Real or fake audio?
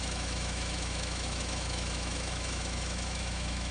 fake